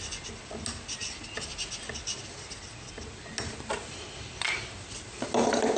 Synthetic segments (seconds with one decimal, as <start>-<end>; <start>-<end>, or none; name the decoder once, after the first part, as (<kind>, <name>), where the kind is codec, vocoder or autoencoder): none